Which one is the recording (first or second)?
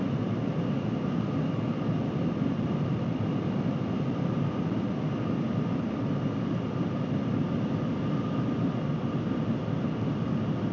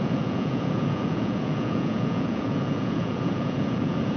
first